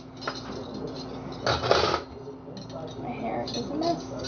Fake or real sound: real